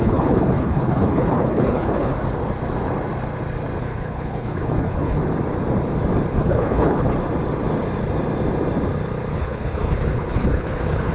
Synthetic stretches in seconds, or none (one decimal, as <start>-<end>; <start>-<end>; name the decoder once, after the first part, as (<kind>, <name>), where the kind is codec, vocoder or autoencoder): 0.0-2.1 (codec, HILCodec); 3.8-5.2; 6.3-7.1; 9.3-11.1